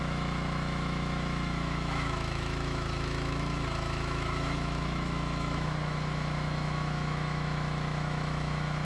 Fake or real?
fake